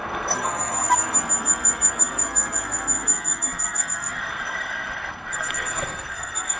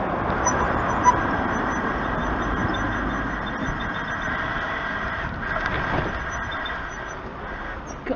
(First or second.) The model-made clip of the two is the first